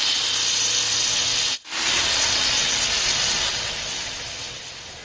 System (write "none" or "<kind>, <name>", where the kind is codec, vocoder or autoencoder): none